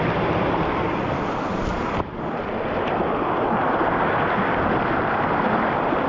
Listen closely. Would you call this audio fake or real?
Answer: real